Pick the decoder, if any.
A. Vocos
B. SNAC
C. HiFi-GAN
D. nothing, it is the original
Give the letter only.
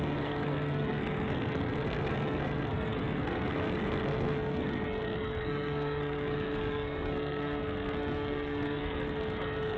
B